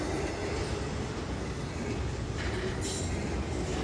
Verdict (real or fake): real